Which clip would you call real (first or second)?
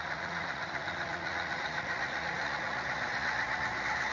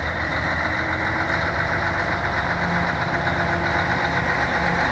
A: second